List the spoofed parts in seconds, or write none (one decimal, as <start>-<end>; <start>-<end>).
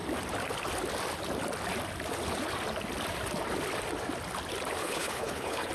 4.8-5.7